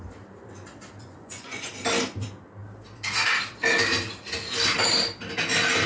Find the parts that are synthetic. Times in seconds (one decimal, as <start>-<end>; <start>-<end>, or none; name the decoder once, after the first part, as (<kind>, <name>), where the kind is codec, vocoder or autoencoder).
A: 1.0-1.7 (vocoder, Vocos)